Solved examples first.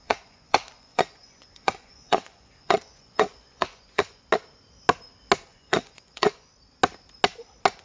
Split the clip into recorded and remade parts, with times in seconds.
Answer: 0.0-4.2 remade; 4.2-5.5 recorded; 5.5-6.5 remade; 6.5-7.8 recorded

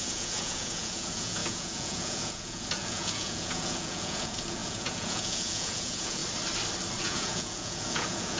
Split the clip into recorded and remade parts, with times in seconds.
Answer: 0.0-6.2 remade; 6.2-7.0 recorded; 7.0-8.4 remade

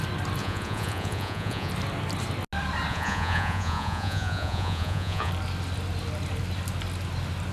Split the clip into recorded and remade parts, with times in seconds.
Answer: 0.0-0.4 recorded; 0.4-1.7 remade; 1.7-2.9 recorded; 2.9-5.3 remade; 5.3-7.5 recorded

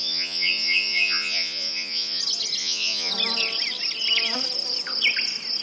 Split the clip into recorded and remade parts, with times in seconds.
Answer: 0.0-2.2 remade; 2.2-2.6 recorded; 2.6-3.1 remade; 3.1-5.6 recorded

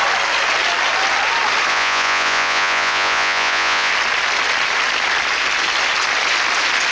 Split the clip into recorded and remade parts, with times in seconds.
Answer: 0.0-1.7 recorded; 1.7-3.9 remade; 3.9-6.9 recorded